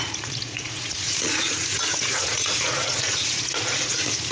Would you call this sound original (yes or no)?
no